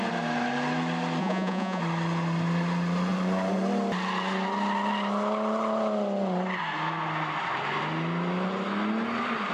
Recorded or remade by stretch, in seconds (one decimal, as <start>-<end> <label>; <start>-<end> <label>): 0.0-1.2 recorded; 1.2-1.8 remade; 1.8-9.5 recorded